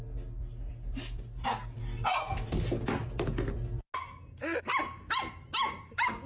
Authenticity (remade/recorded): recorded